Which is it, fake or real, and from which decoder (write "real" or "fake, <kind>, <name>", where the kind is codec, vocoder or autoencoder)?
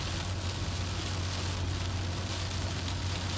real